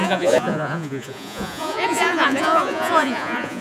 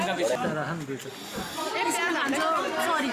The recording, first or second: second